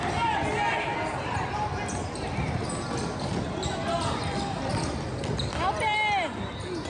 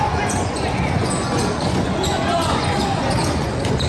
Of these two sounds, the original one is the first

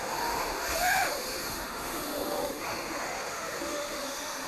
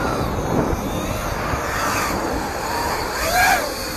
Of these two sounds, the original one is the second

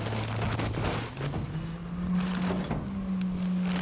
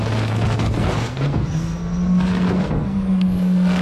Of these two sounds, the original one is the first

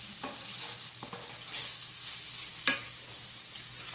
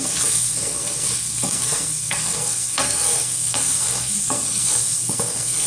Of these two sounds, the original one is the first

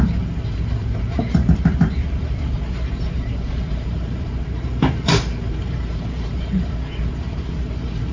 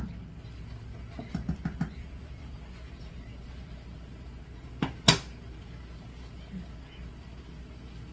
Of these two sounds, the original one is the second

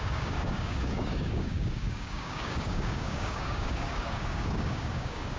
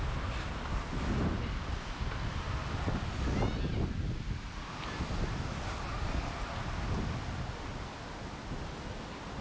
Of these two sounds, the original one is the second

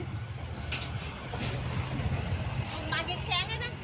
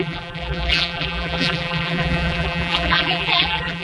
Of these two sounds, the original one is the first